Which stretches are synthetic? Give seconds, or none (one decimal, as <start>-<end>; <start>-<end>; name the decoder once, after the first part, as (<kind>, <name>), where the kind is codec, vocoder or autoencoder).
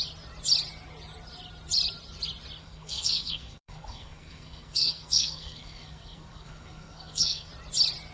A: 2.6-7.5 (codec, SNAC)